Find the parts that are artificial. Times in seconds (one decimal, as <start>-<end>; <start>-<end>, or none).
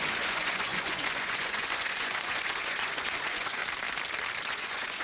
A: 0.0-3.6; 4.5-5.0